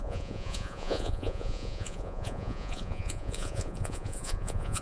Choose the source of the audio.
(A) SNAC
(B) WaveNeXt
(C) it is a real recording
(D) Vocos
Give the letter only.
D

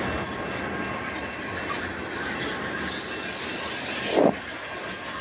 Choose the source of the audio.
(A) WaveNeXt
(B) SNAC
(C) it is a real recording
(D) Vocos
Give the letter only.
C